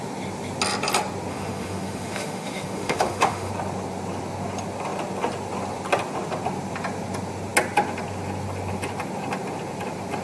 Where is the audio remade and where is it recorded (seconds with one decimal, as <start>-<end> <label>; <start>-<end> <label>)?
0.0-1.3 recorded; 1.3-3.5 remade; 3.5-10.2 recorded